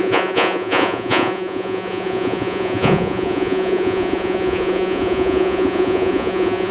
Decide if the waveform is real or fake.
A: fake